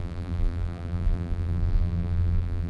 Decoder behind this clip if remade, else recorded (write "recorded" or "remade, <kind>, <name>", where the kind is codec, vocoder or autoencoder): remade, vocoder, BigVGAN v2